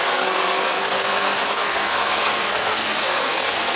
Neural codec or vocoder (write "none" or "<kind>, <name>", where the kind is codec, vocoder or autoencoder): codec, SNAC